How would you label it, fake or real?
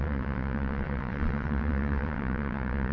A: fake